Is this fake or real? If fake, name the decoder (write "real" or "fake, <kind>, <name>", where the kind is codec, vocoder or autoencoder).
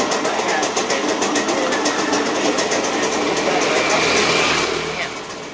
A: real